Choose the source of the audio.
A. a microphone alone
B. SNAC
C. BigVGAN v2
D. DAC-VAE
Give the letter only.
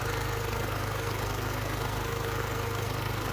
B